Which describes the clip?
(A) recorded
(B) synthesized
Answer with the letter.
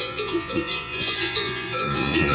B